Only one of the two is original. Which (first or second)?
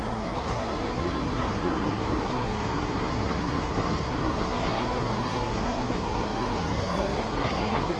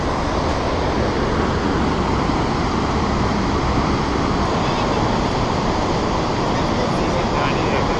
second